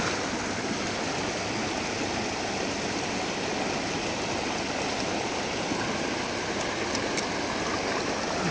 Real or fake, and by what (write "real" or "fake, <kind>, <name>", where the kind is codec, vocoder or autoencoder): real